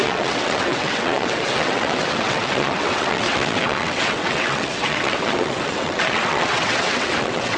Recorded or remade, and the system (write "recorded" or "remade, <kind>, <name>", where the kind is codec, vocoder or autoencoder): remade, vocoder, WaveNeXt